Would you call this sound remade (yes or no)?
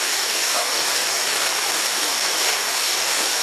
yes